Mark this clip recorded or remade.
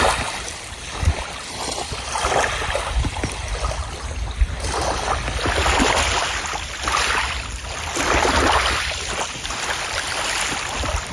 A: recorded